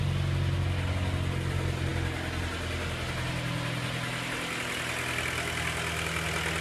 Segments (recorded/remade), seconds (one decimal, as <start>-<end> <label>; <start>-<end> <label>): 0.0-6.6 recorded